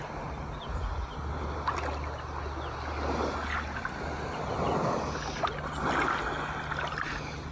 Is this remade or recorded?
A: recorded